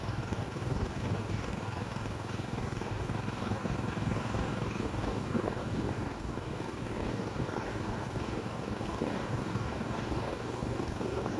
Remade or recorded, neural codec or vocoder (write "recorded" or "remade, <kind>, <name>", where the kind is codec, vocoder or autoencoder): remade, codec, DAC